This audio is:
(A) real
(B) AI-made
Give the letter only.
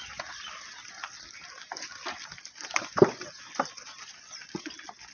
A